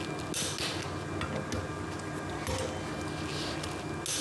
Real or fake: real